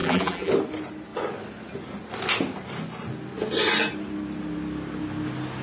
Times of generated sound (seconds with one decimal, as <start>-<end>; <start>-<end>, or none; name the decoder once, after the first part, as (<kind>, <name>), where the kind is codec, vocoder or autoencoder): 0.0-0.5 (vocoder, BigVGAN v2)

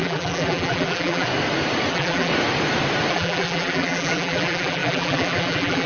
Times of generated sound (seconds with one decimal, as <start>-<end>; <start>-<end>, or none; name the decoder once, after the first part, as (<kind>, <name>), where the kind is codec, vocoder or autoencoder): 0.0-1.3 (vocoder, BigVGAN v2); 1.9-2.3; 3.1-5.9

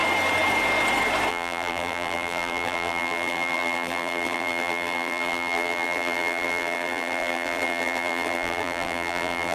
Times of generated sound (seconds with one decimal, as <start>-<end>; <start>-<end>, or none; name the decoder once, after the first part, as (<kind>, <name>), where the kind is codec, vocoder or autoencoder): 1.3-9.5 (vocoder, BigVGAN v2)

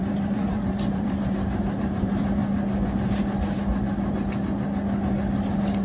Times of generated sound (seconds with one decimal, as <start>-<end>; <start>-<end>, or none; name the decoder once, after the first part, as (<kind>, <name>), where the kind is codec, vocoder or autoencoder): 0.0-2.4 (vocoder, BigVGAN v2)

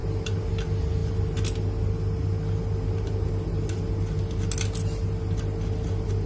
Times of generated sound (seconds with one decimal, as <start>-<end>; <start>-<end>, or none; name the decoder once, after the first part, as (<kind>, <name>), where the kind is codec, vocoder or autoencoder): none